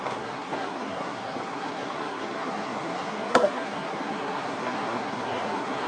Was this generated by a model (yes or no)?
yes